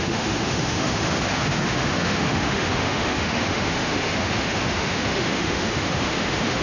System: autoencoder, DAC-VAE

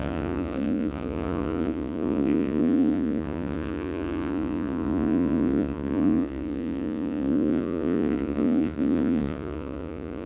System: vocoder, Vocos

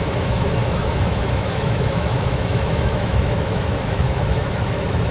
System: autoencoder, DAC-VAE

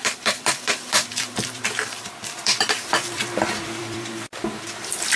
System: vocoder, BigVGAN v2